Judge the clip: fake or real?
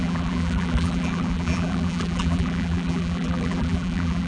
fake